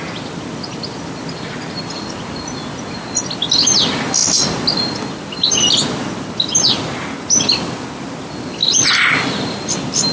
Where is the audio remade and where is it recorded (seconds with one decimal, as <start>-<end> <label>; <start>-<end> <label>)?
0.0-10.1 recorded